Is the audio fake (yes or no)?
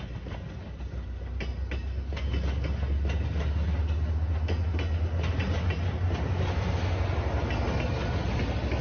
no